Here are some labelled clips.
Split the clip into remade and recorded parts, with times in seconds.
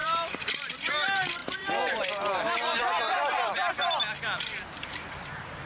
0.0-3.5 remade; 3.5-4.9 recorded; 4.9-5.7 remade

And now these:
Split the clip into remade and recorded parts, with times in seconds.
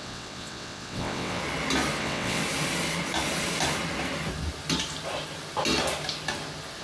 0.0-1.4 remade; 1.4-2.0 recorded; 2.0-2.4 remade; 2.4-6.8 recorded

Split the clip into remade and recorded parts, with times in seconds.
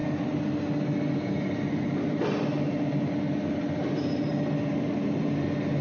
0.0-5.8 recorded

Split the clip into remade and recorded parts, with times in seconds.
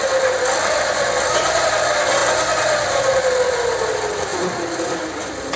0.0-5.6 recorded